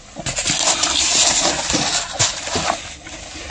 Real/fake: real